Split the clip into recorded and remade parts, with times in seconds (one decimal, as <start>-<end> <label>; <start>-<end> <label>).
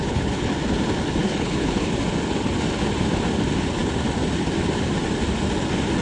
0.0-0.5 remade; 0.5-1.2 recorded; 1.2-1.9 remade; 1.9-6.0 recorded